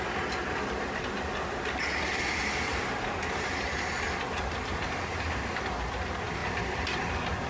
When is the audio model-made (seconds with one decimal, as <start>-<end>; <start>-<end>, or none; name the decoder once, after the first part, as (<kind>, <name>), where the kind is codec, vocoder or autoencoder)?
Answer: 6.4-7.1 (vocoder, BigVGAN v2)